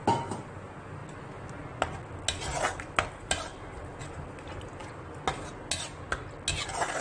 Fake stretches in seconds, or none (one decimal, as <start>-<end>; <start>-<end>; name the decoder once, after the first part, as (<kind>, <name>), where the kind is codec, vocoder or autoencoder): none